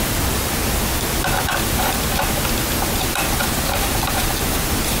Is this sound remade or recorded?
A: recorded